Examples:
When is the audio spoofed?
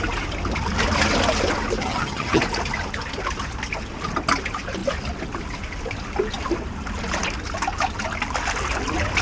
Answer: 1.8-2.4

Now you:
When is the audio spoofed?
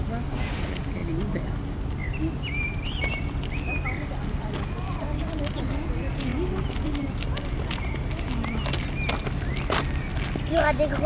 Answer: none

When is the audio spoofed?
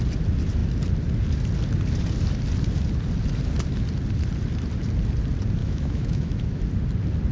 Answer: 5.6-6.6